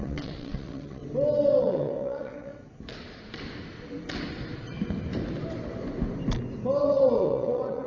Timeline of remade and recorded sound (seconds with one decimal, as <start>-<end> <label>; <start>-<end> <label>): 0.0-1.0 remade; 1.0-1.6 recorded; 1.6-2.5 remade; 2.5-6.8 recorded; 6.8-7.9 remade